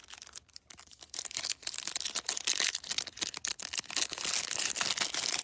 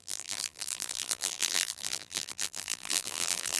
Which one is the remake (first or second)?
second